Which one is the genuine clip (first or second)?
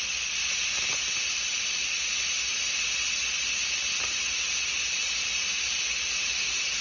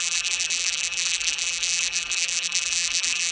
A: first